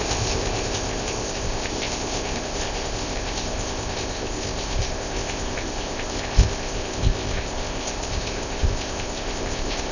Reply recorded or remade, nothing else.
remade